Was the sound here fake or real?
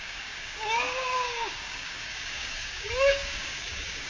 fake